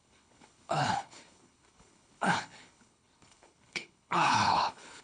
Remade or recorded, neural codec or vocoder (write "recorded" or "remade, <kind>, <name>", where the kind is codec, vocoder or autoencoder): remade, codec, HILCodec